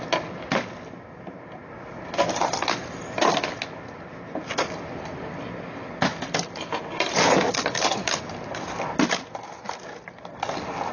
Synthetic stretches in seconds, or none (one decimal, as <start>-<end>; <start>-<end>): none